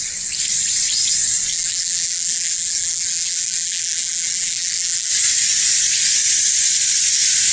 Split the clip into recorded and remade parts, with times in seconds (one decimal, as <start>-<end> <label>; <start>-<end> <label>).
0.0-1.5 recorded; 1.5-5.1 remade; 5.1-7.5 recorded